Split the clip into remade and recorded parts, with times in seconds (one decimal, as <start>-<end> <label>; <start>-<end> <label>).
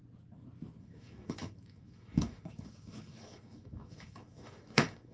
0.0-0.8 recorded; 0.8-5.1 remade